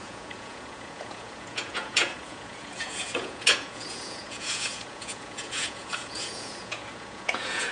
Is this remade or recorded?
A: remade